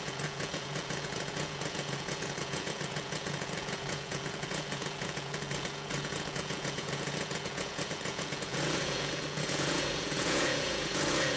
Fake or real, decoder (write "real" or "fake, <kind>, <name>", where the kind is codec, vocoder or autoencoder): fake, vocoder, Vocos